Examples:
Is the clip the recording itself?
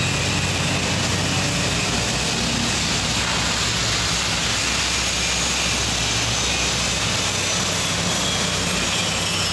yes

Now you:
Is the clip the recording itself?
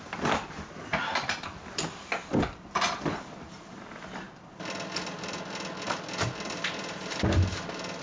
no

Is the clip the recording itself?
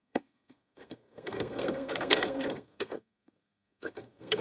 no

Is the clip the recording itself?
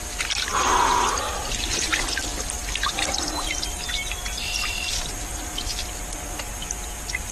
yes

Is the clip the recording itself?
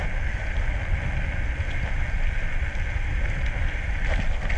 yes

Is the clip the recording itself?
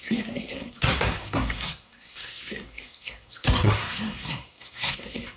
no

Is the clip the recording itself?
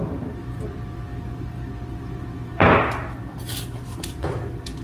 yes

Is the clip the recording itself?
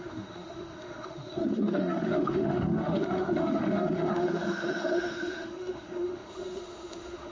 no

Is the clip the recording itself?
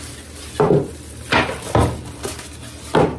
yes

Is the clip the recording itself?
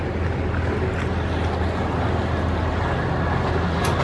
yes